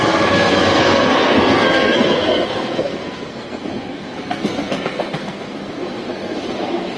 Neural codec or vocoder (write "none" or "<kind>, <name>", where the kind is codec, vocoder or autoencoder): codec, SNAC